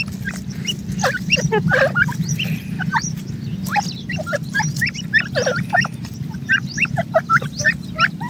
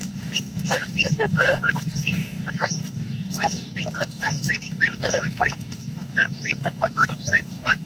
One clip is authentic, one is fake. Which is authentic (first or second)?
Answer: first